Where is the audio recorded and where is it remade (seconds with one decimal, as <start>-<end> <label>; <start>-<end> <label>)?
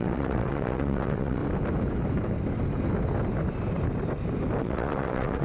0.0-1.4 remade; 1.4-4.6 recorded; 4.6-5.4 remade